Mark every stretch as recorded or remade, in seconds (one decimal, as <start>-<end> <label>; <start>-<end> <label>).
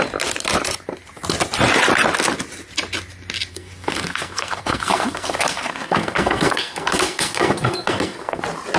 0.0-3.5 recorded; 3.5-8.4 remade; 8.4-8.8 recorded